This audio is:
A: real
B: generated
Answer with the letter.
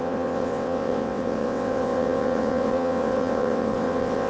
B